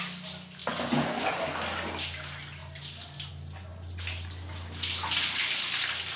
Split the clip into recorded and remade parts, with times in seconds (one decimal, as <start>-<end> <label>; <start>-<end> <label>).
0.0-6.2 recorded